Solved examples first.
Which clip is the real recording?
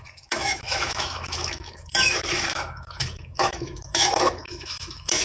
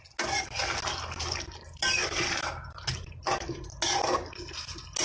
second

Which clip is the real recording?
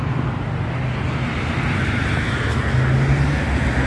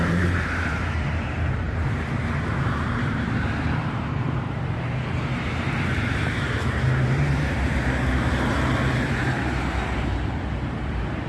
first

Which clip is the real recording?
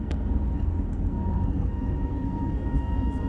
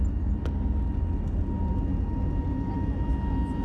second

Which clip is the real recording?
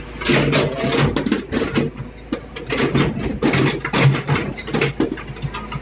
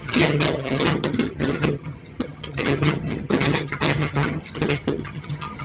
first